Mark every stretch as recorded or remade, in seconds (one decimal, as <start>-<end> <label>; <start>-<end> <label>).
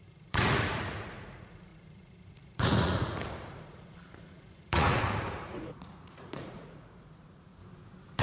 0.0-7.6 remade; 7.6-8.2 recorded